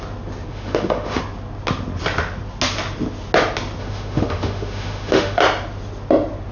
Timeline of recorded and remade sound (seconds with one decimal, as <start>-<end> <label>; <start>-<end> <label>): 0.0-0.5 recorded; 0.5-1.2 remade; 1.2-3.8 recorded; 3.8-5.4 remade; 5.4-6.5 recorded